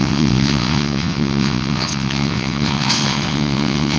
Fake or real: fake